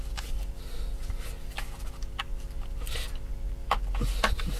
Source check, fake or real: fake